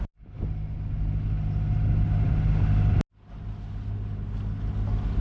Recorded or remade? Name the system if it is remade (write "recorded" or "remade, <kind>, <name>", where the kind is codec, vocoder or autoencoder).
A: recorded